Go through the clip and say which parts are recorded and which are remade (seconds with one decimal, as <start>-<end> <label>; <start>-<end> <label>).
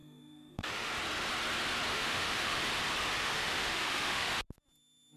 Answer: 0.0-0.9 remade; 0.9-1.9 recorded; 1.9-2.6 remade; 2.6-3.2 recorded; 3.2-4.3 remade; 4.3-5.2 recorded